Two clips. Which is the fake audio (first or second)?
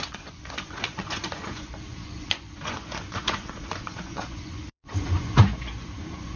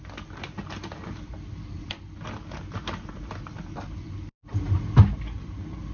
first